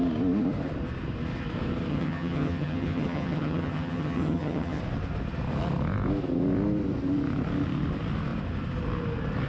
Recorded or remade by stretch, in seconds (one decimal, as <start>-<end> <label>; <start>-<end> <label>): 0.0-1.9 recorded; 1.9-4.8 remade; 4.8-9.5 recorded